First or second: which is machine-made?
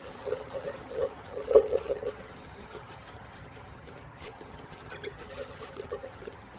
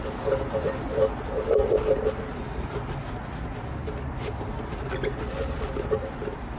first